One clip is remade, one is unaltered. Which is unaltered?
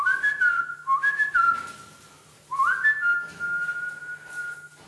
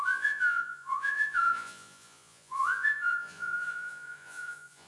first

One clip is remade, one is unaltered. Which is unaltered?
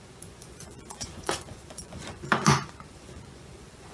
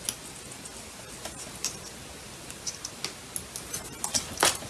second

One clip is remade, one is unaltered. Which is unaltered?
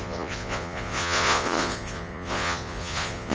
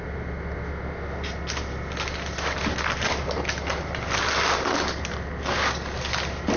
second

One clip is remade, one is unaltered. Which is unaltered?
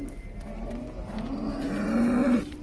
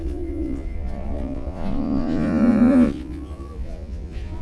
first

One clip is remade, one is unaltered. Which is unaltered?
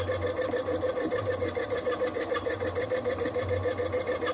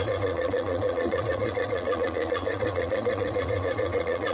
first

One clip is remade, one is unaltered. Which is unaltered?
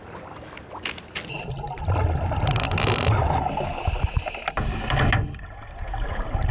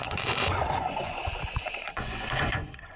first